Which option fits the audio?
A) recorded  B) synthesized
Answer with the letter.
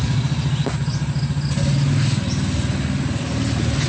A